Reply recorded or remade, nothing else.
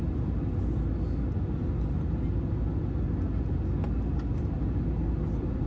recorded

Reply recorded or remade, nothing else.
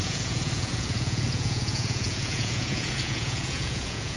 remade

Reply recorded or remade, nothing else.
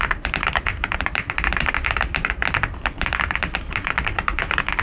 remade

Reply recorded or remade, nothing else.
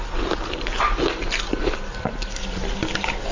recorded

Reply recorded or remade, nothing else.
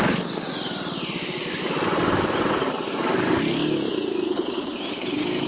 recorded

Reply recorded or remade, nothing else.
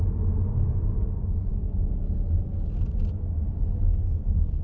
recorded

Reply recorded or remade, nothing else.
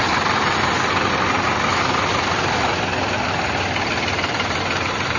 recorded